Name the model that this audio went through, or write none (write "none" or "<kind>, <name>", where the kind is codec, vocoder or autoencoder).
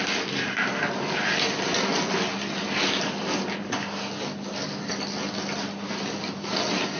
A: none